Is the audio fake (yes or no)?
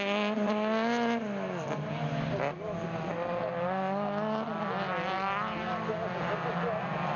no